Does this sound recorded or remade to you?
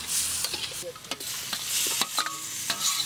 recorded